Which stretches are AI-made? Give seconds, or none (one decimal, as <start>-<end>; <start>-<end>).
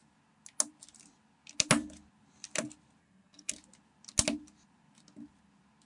3.0-3.5